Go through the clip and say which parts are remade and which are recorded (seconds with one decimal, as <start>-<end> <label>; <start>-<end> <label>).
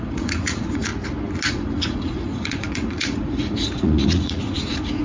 0.0-0.9 remade; 0.9-1.5 recorded; 1.5-5.0 remade